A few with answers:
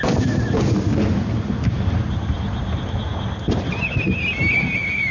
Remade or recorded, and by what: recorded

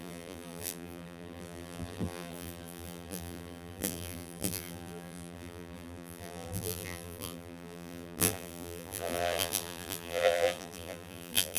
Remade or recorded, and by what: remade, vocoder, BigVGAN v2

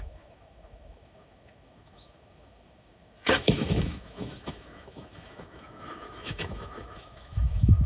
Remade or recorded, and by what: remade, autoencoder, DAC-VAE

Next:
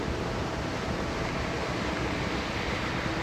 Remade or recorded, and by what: recorded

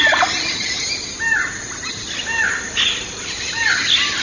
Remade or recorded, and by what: recorded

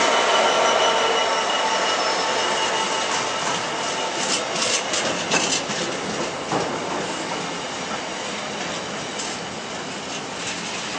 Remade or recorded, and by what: recorded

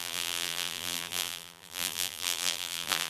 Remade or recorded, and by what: remade, vocoder, BigVGAN v2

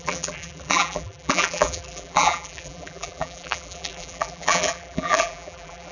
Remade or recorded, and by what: remade, vocoder, BigVGAN v2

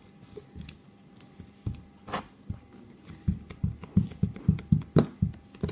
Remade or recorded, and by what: recorded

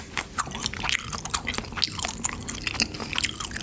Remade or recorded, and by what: recorded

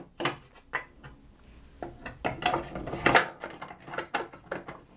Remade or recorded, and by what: recorded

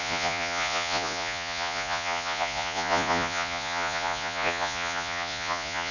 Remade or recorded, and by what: remade, vocoder, Vocos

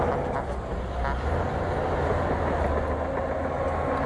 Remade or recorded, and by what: recorded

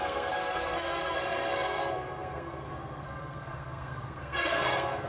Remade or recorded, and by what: remade, codec, SNAC